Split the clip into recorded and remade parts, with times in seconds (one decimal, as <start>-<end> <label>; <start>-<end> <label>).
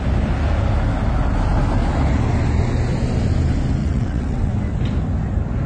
0.0-3.8 recorded; 3.8-4.5 remade; 4.5-5.7 recorded